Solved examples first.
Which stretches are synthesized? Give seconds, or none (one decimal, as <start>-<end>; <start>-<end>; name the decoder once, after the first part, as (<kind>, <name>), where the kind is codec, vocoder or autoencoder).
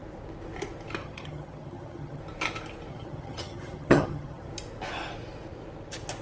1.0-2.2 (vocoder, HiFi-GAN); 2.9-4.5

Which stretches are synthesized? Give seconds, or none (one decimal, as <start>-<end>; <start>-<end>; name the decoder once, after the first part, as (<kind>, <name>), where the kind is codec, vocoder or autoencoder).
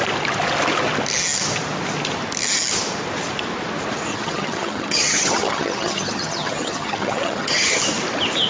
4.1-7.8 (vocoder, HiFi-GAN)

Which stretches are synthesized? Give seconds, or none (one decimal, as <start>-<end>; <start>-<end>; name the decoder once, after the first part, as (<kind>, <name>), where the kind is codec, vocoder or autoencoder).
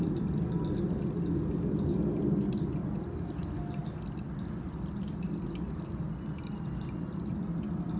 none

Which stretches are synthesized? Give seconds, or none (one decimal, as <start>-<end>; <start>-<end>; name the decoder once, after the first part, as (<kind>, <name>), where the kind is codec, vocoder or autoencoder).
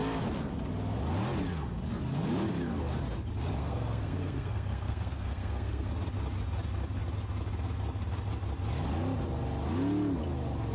3.6-5.9 (codec, SNAC)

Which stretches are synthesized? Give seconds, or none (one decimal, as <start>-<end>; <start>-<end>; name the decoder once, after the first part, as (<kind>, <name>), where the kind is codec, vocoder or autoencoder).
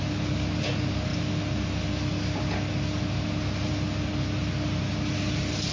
none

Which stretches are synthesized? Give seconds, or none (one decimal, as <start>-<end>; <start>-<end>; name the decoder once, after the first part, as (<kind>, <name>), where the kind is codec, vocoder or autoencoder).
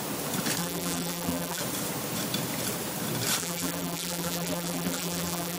0.6-1.6 (vocoder, BigVGAN v2); 3.4-5.6